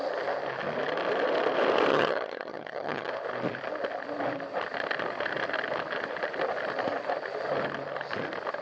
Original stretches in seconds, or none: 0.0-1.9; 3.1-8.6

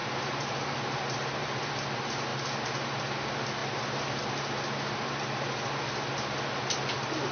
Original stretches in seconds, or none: 1.7-7.3

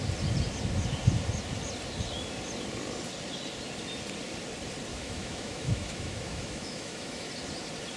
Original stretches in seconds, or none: 0.0-4.9; 7.3-8.0

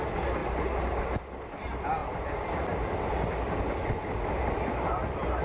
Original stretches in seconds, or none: 0.0-5.4

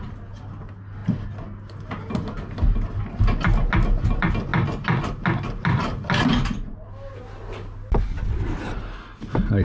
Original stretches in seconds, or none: 0.0-9.6

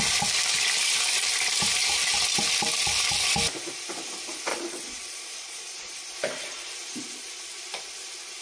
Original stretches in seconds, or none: 0.0-4.5; 5.9-8.4